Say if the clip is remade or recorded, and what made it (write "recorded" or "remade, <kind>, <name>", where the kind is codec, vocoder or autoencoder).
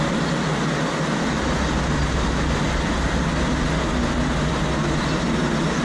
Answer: recorded